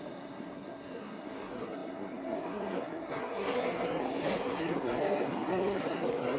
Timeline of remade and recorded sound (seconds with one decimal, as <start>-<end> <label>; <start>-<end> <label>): 0.0-6.4 remade